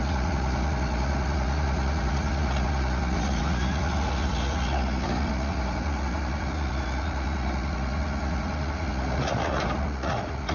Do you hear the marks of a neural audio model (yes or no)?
yes